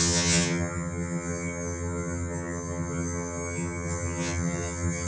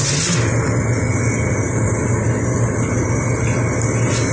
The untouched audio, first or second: second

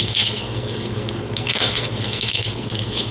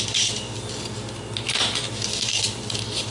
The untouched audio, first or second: second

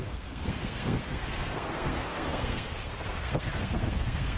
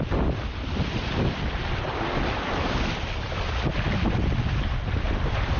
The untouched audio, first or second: second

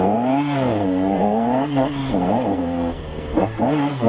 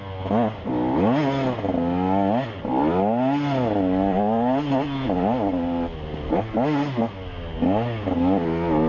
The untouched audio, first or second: second